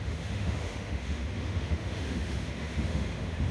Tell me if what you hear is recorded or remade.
remade